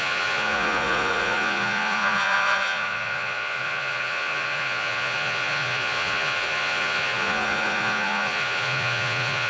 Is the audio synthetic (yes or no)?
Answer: yes